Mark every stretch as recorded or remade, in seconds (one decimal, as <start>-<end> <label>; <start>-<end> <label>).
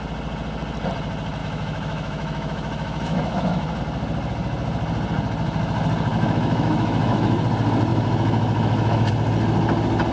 0.0-1.4 recorded; 1.4-3.8 remade; 3.8-6.1 recorded; 6.1-7.4 remade; 7.4-7.9 recorded; 7.9-9.1 remade; 9.1-10.1 recorded